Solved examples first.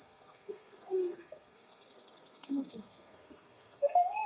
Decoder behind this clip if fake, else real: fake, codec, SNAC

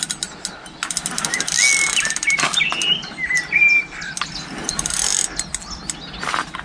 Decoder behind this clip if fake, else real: real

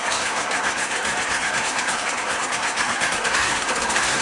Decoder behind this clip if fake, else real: fake, codec, SNAC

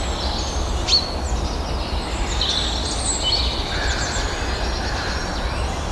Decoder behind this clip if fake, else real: real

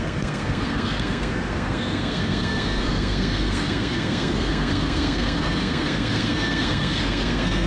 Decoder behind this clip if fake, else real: fake, codec, SNAC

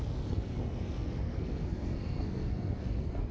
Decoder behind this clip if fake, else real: fake, codec, SNAC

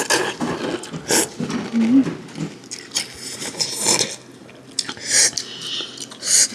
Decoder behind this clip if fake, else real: real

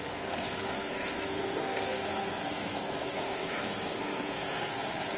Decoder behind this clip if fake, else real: fake, codec, SNAC